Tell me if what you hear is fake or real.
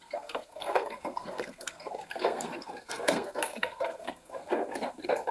fake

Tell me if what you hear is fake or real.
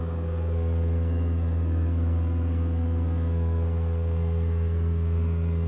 fake